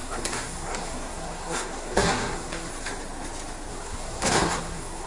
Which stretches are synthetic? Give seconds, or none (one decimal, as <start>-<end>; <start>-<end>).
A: 0.0-2.7; 3.7-5.1